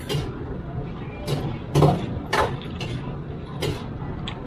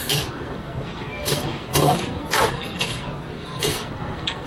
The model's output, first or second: second